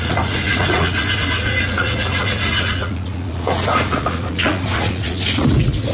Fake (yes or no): yes